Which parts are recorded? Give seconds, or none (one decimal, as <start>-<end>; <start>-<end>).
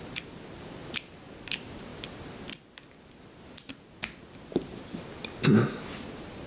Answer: 0.0-6.5